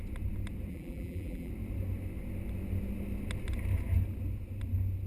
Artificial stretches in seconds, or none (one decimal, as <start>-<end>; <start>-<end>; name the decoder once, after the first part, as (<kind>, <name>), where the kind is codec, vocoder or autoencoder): 0.7-1.5 (vocoder, BigVGAN v2)